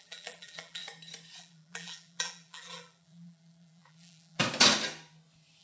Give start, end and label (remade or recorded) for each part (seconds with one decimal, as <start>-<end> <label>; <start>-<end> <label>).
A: 0.0-0.8 remade; 0.8-1.4 recorded; 1.4-4.4 remade; 4.4-5.6 recorded